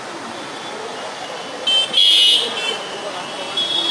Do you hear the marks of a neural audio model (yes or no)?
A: no